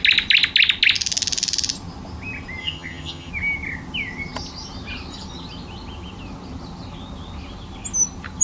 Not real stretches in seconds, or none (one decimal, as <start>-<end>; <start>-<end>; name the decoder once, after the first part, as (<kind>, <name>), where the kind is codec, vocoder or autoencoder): 2.6-3.3 (vocoder, HiFi-GAN)